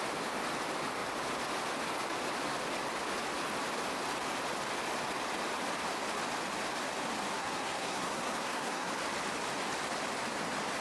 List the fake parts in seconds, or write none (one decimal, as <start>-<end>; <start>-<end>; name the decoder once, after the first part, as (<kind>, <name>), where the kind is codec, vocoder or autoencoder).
7.3-8.9 (codec, SNAC)